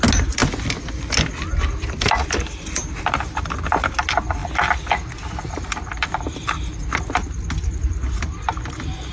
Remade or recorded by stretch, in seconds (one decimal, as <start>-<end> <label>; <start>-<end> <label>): 0.0-9.1 recorded